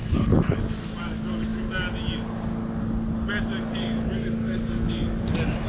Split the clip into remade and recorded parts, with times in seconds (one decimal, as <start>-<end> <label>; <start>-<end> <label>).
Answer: 0.0-0.6 remade; 0.6-5.7 recorded